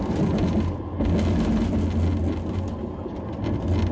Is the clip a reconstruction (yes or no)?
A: no